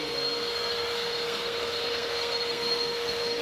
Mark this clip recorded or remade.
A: remade